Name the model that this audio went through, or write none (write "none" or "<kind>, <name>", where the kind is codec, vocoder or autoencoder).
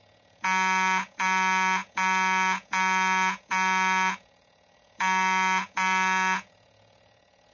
vocoder, Vocos